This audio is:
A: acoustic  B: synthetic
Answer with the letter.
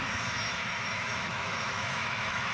B